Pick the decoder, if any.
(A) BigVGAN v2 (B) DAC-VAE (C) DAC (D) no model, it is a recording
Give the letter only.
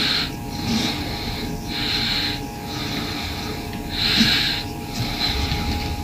D